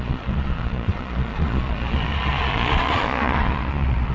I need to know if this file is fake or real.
fake